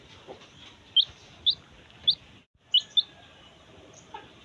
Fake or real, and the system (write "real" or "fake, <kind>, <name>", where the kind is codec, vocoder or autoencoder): real